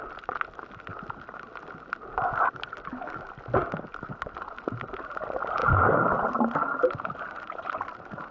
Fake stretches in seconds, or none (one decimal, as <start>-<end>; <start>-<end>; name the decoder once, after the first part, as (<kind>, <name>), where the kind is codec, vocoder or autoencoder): none